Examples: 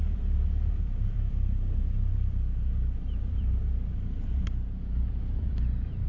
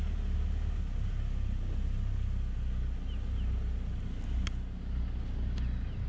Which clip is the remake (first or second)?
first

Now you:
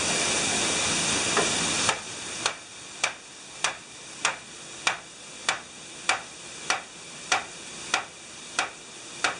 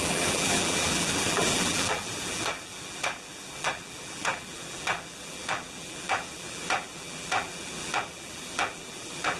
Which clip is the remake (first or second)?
second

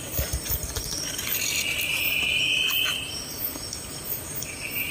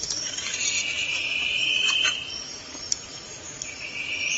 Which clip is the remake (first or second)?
second